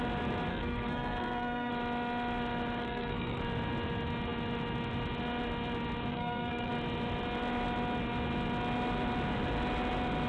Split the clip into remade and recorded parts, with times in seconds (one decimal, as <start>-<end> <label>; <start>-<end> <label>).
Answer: 0.0-0.5 recorded; 0.5-1.7 remade; 1.7-2.8 recorded; 2.8-3.4 remade; 3.4-6.1 recorded; 6.1-6.7 remade; 6.7-10.3 recorded